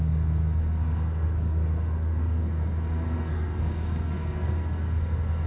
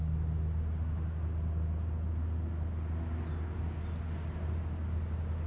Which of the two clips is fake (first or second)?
first